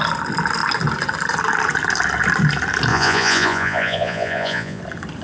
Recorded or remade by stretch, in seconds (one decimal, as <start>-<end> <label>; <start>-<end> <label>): 0.0-2.9 recorded; 2.9-4.8 remade; 4.8-5.2 recorded